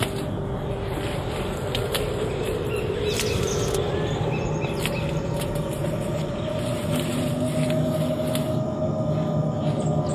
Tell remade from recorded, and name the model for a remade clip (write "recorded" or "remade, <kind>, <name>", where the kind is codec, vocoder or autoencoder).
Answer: recorded